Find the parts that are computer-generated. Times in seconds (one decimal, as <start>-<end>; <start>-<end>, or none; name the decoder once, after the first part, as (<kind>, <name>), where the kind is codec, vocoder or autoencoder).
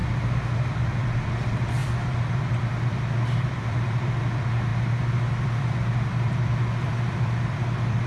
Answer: 0.6-4.7 (vocoder, BigVGAN v2); 5.4-8.1